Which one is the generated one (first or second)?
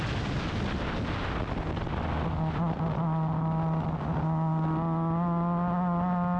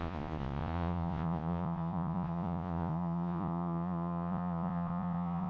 second